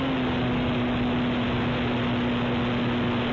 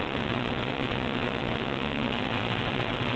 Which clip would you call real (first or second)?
first